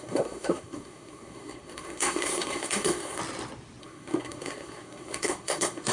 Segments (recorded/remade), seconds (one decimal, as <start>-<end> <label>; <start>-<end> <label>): 0.0-3.2 remade; 3.2-3.8 recorded; 3.8-5.9 remade